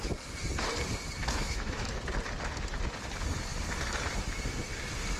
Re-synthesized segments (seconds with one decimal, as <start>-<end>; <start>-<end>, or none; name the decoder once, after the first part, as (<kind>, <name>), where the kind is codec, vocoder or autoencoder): 1.2-1.9 (autoencoder, DAC-VAE)